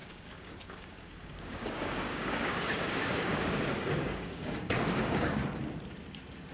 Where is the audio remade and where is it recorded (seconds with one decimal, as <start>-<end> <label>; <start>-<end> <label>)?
0.0-5.4 remade; 5.4-6.5 recorded